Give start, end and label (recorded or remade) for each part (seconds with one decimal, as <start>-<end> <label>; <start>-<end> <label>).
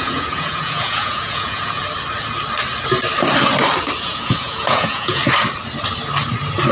0.0-1.8 remade; 1.8-4.0 recorded; 4.0-5.2 remade; 5.2-6.7 recorded